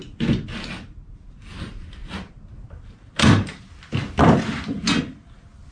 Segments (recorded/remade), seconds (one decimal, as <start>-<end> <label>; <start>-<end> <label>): 0.0-5.7 recorded